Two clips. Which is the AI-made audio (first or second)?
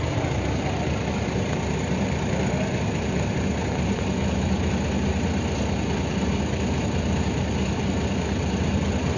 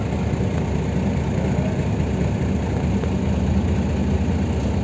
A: first